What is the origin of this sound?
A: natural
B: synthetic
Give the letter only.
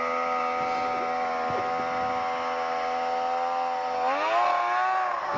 A